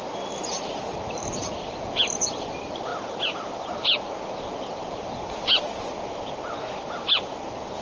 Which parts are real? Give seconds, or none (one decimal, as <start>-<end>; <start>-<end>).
0.0-7.8